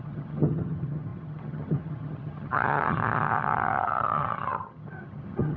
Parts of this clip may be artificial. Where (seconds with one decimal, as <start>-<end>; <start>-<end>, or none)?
0.0-5.6

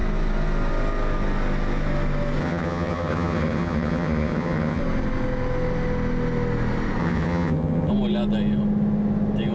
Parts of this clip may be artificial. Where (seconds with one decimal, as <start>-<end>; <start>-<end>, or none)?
2.4-4.8; 7.0-7.9

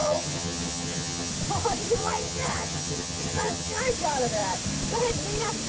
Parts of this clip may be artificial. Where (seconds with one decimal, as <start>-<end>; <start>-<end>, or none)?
0.0-1.3; 2.0-3.8

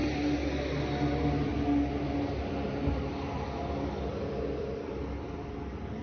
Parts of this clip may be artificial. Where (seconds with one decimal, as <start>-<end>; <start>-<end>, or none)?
none